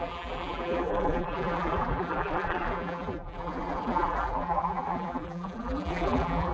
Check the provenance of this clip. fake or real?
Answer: fake